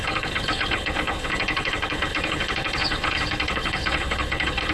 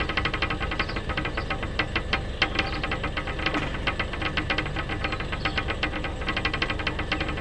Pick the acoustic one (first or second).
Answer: second